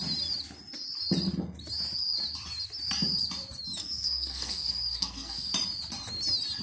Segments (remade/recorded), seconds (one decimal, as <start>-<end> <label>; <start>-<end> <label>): 0.0-3.8 recorded; 3.8-5.5 remade; 5.5-6.6 recorded